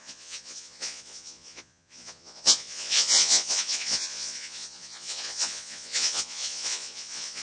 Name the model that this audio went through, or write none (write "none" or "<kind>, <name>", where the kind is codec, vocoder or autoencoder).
vocoder, Vocos